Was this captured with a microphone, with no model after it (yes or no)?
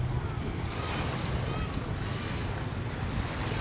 yes